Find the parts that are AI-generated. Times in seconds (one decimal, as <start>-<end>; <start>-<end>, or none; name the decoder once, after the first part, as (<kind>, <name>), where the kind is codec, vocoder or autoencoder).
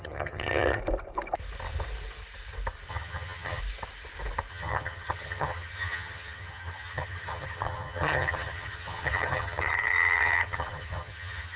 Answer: 0.0-0.8 (vocoder, HiFi-GAN); 2.9-3.6; 4.5-11.6